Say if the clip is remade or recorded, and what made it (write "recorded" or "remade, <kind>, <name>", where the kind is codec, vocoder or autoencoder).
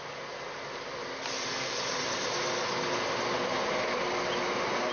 recorded